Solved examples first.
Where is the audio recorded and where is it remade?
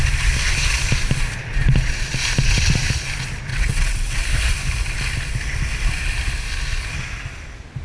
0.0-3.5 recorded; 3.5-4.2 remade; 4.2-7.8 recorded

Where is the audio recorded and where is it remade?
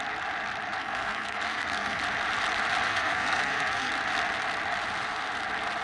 0.0-0.8 recorded; 0.8-2.0 remade; 2.0-2.9 recorded; 2.9-3.9 remade; 3.9-5.8 recorded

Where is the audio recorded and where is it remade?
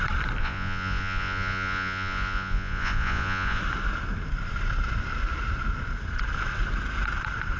0.0-0.4 recorded; 0.4-3.6 remade; 3.6-7.6 recorded